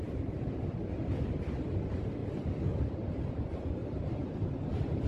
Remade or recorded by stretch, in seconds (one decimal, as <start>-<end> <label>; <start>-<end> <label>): 0.0-3.8 recorded; 3.8-4.6 remade; 4.6-5.1 recorded